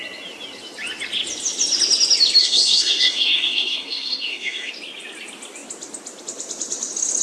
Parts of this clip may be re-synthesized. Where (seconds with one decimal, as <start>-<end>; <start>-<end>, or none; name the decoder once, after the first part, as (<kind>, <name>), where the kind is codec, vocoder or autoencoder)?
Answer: 2.4-4.7 (codec, SNAC)